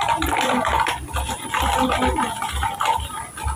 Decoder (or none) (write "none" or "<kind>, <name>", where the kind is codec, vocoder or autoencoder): none